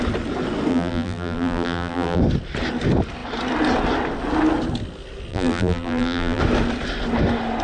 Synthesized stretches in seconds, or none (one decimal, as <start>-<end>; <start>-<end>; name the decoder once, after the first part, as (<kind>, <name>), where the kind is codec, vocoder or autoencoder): 0.7-2.2 (vocoder, BigVGAN v2); 5.3-6.4